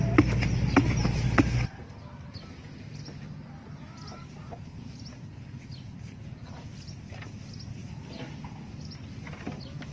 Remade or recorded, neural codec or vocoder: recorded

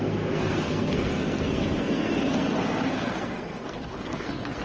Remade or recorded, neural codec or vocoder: remade, codec, SNAC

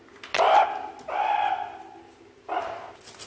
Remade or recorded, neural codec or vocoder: recorded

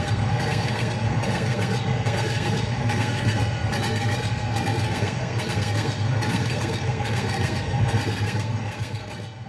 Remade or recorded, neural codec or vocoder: remade, codec, SNAC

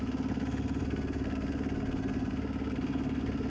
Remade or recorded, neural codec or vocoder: remade, codec, SNAC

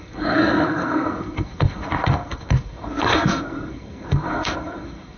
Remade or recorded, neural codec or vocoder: remade, codec, SNAC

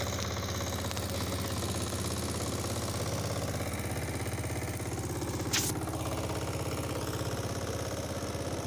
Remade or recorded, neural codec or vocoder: recorded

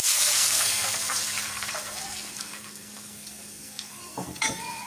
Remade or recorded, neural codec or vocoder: remade, codec, SNAC